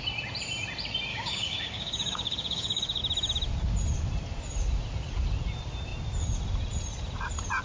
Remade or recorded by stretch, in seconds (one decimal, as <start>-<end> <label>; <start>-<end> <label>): 0.0-1.1 recorded; 1.1-3.0 remade; 3.0-7.6 recorded